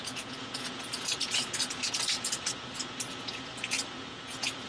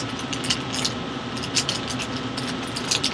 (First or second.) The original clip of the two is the second